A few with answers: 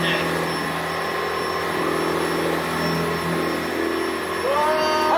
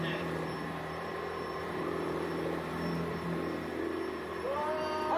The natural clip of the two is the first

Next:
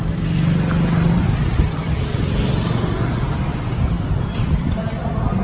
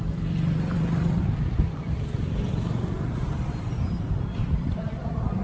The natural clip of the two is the first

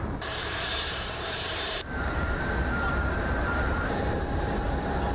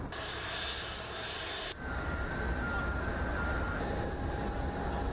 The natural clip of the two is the second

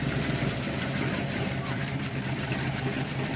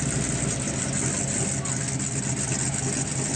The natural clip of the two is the second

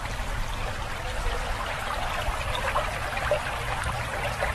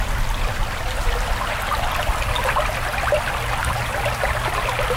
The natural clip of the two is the second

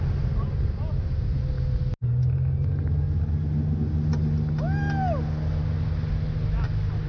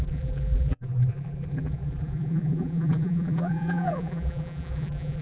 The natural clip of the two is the first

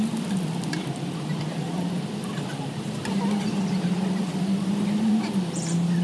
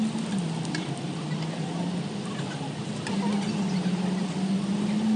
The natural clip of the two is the second